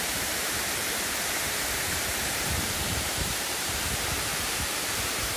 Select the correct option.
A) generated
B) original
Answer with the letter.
A